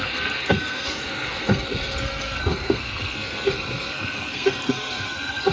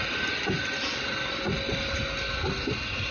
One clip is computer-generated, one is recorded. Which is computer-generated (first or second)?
first